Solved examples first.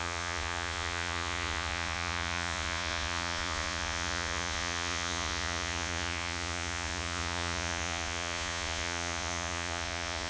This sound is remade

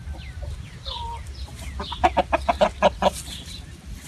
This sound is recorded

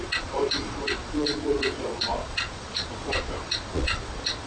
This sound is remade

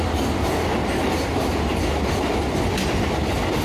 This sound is recorded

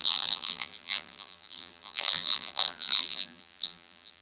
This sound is remade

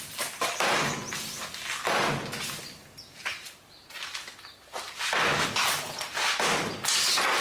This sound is recorded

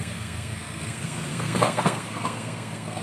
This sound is remade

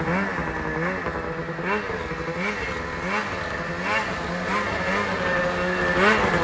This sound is recorded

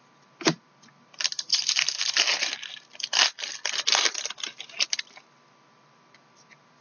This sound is recorded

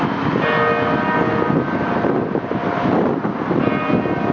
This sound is recorded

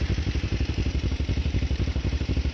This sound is remade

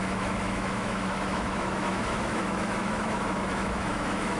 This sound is remade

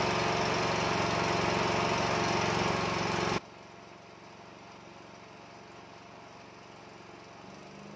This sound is recorded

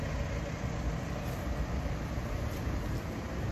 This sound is recorded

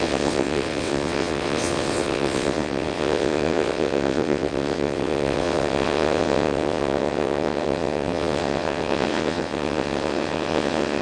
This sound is remade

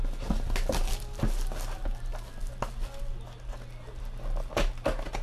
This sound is recorded